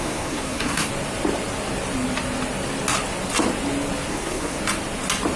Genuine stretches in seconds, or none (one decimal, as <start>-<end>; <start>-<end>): 0.9-4.1; 4.6-5.4